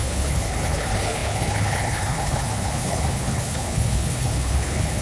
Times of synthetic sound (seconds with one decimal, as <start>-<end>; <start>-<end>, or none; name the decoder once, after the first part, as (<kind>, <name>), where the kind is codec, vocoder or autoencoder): 0.0-5.0 (codec, HILCodec)